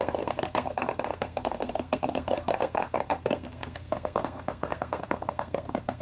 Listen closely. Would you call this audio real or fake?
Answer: fake